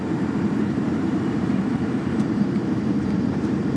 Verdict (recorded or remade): remade